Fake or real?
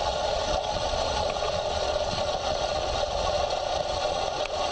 fake